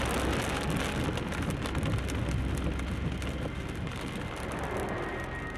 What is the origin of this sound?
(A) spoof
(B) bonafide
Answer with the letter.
B